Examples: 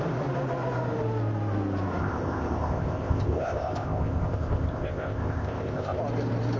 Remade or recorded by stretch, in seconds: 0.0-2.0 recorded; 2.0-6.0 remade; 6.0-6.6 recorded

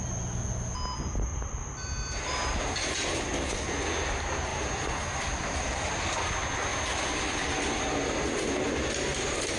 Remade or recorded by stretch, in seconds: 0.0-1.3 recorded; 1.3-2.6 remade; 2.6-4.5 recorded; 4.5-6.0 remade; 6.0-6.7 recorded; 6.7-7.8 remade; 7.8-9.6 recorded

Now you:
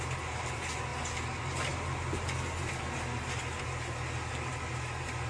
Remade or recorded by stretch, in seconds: 0.0-5.3 recorded

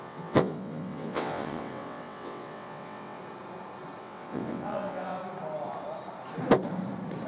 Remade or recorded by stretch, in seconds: 0.0-3.2 remade; 3.2-4.0 recorded; 4.0-5.2 remade; 5.2-7.3 recorded

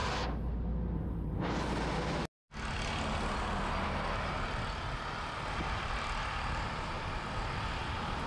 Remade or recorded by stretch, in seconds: 0.0-8.3 recorded